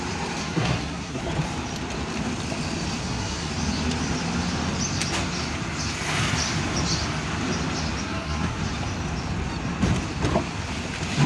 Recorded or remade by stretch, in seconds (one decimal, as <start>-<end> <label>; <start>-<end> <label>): 0.0-0.4 recorded; 0.4-1.2 remade; 1.2-3.0 recorded; 3.0-3.5 remade; 3.5-8.0 recorded; 8.0-8.6 remade; 8.6-11.3 recorded